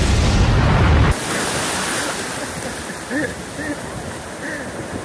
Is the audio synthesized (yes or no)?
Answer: yes